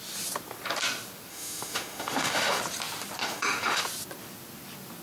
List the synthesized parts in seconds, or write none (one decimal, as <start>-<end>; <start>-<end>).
1.3-2.6; 3.2-3.8